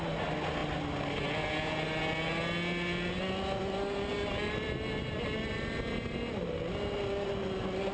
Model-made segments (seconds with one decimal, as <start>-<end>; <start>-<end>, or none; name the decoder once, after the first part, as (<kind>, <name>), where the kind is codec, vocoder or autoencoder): none